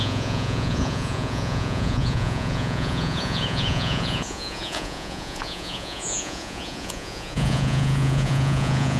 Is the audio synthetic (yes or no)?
yes